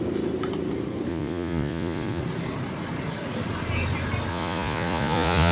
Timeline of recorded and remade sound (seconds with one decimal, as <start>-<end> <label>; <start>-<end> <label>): 0.0-1.1 recorded; 1.1-2.2 remade; 2.2-4.3 recorded; 4.3-5.5 remade